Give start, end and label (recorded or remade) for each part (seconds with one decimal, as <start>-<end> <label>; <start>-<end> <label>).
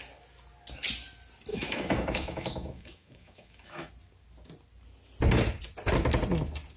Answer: 0.0-1.5 recorded; 1.5-3.9 remade; 3.9-6.8 recorded